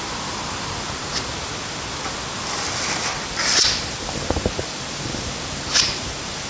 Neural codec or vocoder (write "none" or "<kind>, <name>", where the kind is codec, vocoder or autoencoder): none